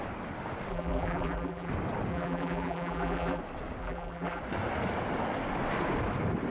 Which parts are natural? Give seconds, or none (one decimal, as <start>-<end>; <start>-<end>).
0.0-0.7; 1.7-2.1; 3.4-3.8; 4.4-6.5